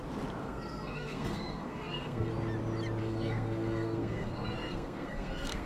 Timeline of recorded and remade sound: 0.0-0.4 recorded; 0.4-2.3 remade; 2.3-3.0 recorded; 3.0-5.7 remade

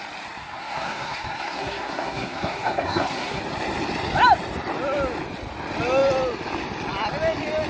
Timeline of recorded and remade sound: 0.0-0.4 recorded; 0.4-3.4 remade; 3.4-7.7 recorded

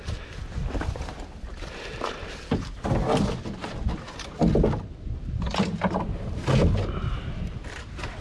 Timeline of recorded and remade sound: 0.0-8.2 recorded

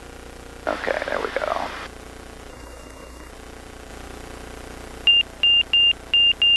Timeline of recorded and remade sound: 0.0-2.5 recorded; 2.5-3.3 remade; 3.3-6.6 recorded

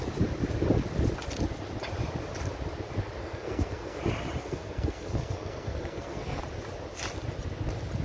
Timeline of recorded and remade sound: 0.0-3.2 recorded; 3.2-4.0 remade; 4.0-4.4 recorded; 4.4-6.4 remade; 6.4-8.0 recorded

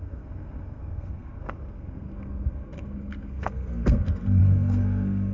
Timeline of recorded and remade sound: 0.0-5.3 remade

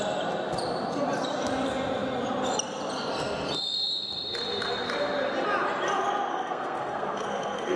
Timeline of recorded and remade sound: 0.0-6.3 recorded; 6.3-7.8 remade